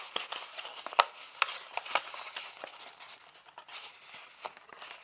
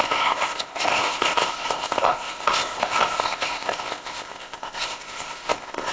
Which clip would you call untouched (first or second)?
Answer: first